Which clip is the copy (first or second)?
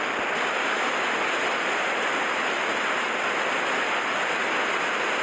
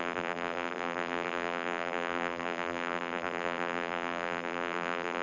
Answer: second